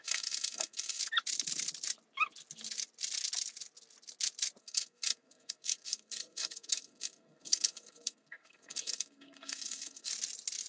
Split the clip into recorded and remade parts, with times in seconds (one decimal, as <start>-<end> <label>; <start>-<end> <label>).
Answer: 0.0-1.0 remade; 1.0-4.6 recorded; 4.6-10.1 remade; 10.1-10.7 recorded